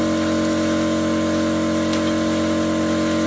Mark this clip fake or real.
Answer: real